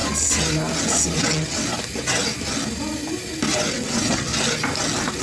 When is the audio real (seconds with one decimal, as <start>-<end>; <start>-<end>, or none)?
0.0-1.2; 1.6-3.7; 4.3-5.2